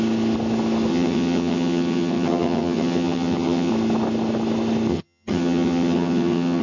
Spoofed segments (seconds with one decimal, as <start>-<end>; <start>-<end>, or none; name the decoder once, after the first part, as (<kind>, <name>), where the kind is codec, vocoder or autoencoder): 0.9-3.7 (vocoder, HiFi-GAN); 4.9-6.6